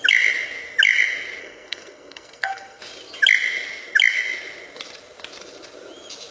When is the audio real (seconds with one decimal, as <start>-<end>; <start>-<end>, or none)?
0.0-1.4; 2.8-6.3